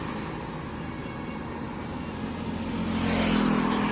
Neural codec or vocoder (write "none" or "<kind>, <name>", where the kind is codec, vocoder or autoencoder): none